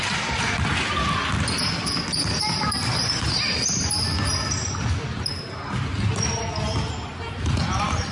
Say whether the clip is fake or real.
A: real